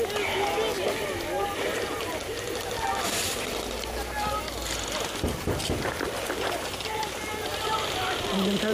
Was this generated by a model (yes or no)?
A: no